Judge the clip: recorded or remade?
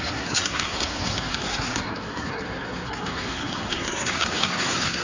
remade